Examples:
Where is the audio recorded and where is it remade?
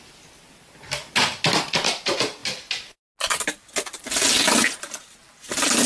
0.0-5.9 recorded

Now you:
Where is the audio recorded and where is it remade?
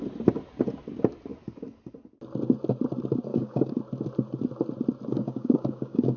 0.0-3.3 recorded; 3.3-3.8 remade; 3.8-5.1 recorded; 5.1-6.2 remade